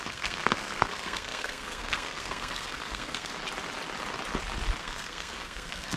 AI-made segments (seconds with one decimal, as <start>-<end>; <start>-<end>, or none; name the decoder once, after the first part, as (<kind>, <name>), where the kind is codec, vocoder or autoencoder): 0.0-3.3 (codec, SNAC); 4.8-6.0